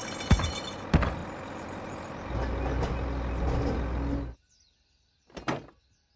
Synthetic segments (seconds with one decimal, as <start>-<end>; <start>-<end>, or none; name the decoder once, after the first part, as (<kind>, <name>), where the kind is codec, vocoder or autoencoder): none